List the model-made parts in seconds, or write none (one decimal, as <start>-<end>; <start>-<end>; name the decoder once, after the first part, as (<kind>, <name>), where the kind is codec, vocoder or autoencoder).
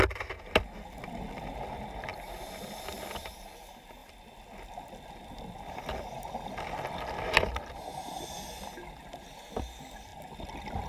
none